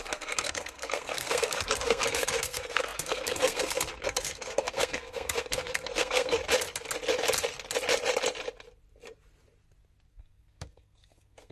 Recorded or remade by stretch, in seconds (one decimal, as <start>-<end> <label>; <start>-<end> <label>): 0.0-6.4 remade; 6.4-10.1 recorded; 10.1-11.5 remade

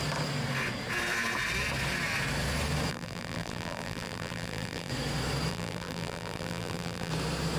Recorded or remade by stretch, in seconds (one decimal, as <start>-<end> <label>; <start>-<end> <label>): 0.0-2.9 recorded; 2.9-4.9 remade; 4.9-5.5 recorded; 5.5-7.1 remade; 7.1-7.6 recorded